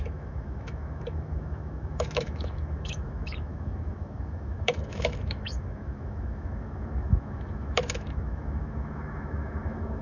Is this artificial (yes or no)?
yes